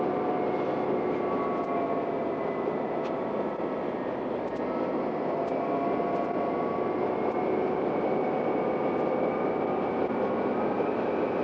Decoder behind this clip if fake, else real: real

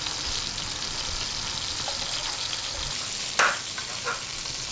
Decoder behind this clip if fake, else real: real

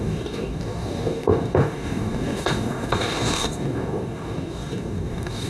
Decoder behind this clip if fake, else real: fake, codec, DAC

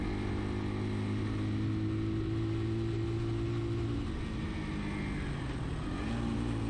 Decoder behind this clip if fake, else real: real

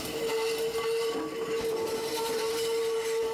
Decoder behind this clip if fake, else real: real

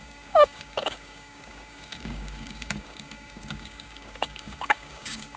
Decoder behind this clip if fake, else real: fake, codec, DAC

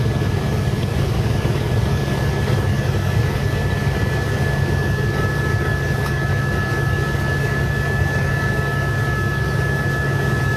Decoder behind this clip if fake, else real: fake, codec, DAC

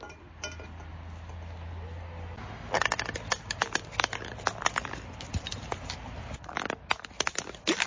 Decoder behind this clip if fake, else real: real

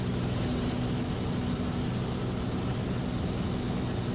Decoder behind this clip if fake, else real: real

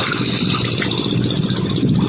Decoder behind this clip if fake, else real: real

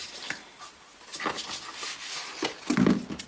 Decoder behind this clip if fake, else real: real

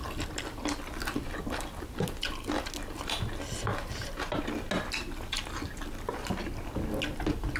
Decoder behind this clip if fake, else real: real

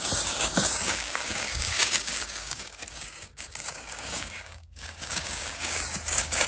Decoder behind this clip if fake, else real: fake, codec, DAC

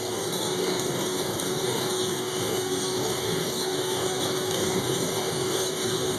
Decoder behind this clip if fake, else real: fake, codec, DAC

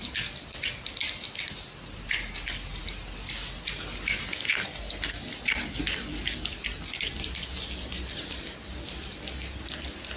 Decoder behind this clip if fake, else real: real